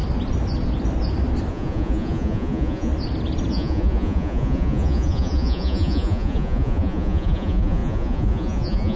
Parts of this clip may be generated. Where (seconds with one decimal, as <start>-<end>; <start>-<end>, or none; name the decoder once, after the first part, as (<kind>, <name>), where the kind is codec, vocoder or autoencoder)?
1.5-2.9 (vocoder, Vocos); 3.5-9.0